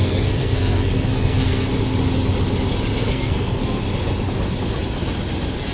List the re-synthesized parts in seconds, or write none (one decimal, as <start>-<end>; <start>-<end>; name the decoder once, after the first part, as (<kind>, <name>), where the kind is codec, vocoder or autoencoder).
0.0-1.7 (codec, SNAC); 3.0-3.8